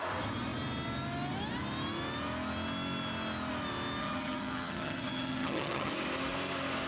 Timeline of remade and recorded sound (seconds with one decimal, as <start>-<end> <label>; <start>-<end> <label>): 0.0-4.0 recorded; 4.0-5.9 remade; 5.9-6.9 recorded